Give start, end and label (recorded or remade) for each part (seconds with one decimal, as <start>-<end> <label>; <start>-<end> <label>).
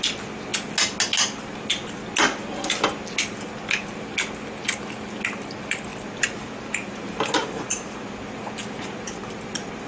0.0-0.5 remade; 0.5-5.5 recorded; 5.5-9.9 remade